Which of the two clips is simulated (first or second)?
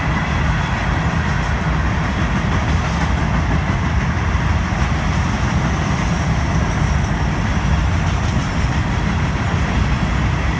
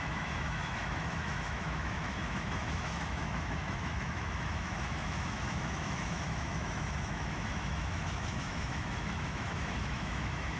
second